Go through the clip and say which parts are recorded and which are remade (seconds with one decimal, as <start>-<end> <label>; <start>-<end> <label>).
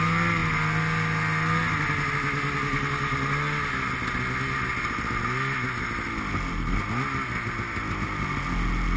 0.0-9.0 recorded